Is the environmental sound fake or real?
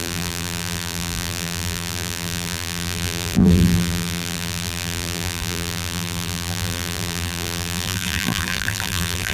fake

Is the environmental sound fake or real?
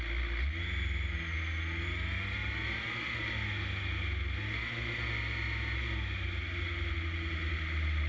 real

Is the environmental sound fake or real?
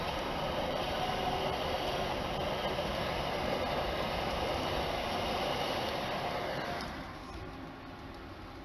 real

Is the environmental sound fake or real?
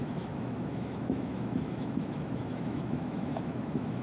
fake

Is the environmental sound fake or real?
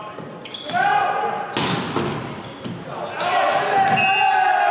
real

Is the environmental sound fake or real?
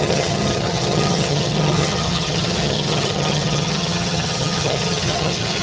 fake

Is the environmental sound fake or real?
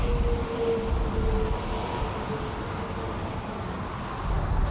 real